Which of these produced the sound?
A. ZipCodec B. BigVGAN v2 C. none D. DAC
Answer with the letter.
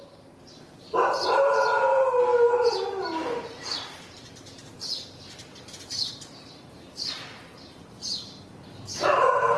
B